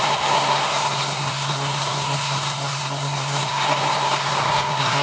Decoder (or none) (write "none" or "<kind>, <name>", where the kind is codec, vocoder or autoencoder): codec, SNAC